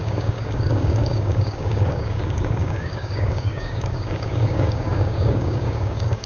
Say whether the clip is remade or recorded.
remade